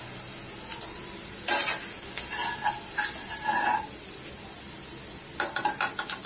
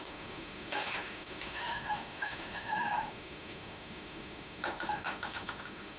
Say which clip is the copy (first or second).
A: second